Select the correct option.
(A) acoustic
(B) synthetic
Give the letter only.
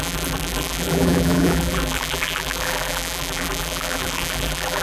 B